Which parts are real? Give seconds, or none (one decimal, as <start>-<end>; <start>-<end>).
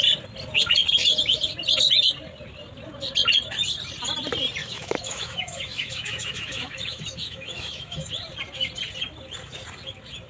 0.0-4.6; 8.1-10.3